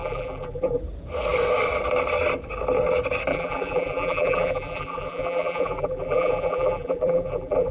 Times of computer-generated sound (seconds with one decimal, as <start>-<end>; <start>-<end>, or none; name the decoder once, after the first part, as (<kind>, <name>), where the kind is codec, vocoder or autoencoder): 0.0-0.8 (vocoder, BigVGAN v2); 3.3-7.7